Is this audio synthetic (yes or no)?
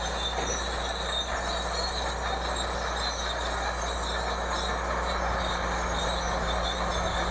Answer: no